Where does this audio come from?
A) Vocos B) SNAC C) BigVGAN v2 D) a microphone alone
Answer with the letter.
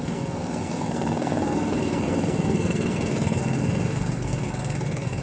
B